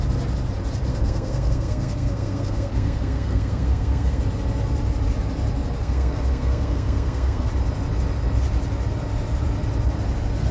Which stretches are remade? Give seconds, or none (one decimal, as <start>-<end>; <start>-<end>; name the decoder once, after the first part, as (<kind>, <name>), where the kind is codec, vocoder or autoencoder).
0.9-4.2 (codec, SNAC); 5.8-7.5